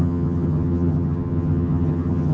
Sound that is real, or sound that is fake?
fake